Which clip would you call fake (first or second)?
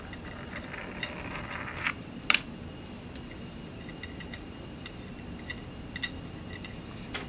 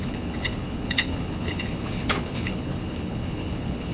second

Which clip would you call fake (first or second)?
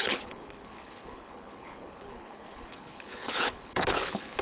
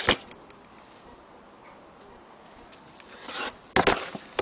first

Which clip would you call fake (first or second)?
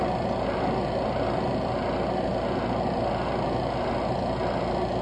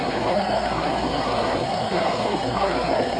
second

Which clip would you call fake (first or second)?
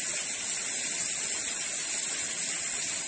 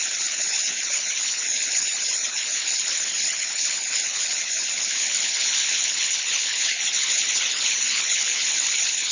second